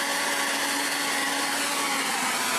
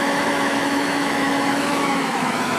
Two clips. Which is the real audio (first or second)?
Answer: first